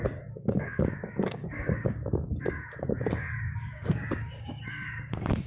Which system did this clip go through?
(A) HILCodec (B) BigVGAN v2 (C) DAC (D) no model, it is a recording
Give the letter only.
C